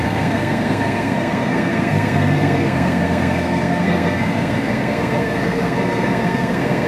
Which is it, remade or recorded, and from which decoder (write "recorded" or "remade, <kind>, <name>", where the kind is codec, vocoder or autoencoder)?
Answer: remade, codec, SNAC